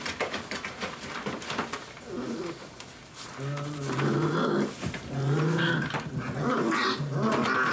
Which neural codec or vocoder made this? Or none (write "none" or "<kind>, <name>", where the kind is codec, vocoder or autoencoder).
none